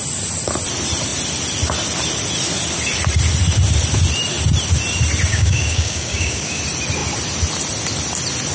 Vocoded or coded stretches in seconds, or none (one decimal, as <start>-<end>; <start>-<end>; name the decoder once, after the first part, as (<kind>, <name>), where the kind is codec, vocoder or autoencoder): 5.3-6.6 (codec, DAC)